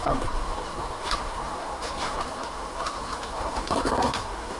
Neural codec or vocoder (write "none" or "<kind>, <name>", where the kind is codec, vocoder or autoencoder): codec, SNAC